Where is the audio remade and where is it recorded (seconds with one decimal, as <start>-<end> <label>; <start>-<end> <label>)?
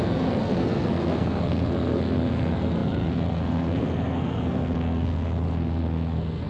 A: 0.0-6.5 remade